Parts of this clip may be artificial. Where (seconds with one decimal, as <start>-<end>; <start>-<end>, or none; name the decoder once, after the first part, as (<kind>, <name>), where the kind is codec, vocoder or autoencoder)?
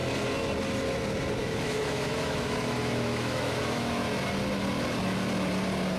1.4-4.0 (autoencoder, DAC-VAE)